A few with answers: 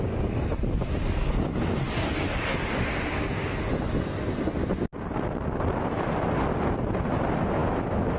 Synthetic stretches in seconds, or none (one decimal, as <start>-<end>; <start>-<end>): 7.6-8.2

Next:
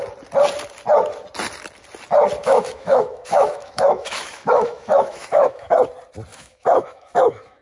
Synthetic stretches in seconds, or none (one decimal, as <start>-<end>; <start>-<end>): 2.4-5.8; 6.3-7.6

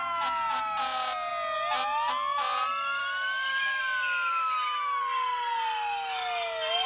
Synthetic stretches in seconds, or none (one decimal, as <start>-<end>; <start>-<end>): 3.0-3.8; 4.3-5.0

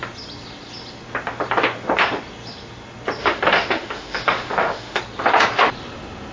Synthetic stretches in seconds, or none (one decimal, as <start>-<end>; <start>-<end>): 3.2-5.0

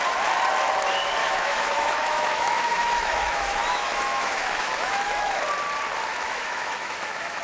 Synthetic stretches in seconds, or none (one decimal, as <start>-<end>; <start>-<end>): 1.2-5.4; 6.1-7.4

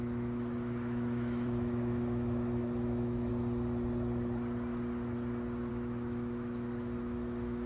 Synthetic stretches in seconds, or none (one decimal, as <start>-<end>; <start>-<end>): 0.0-3.3; 5.7-7.7

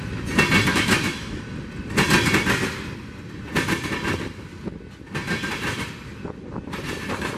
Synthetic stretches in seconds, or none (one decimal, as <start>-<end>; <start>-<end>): 0.7-1.4

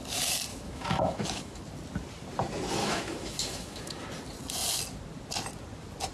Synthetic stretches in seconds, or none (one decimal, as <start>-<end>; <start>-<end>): 0.5-1.6; 2.8-4.0